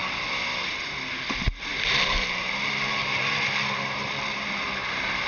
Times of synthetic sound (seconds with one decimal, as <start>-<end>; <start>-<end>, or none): 1.7-5.3